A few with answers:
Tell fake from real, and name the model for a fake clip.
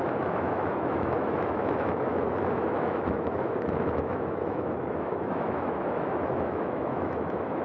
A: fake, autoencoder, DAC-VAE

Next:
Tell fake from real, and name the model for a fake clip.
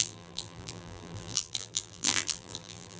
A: fake, vocoder, BigVGAN v2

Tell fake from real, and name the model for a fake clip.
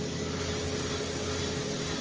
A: real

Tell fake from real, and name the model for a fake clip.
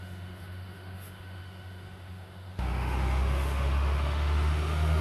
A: fake, autoencoder, DAC-VAE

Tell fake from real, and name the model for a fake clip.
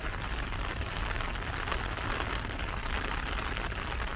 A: real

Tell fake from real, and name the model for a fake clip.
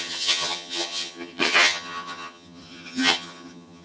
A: fake, vocoder, HiFi-GAN